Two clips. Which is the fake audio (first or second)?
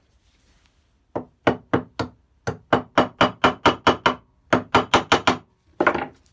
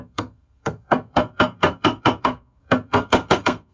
second